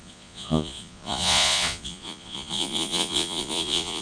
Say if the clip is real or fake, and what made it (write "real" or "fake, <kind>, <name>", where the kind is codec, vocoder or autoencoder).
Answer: fake, vocoder, Vocos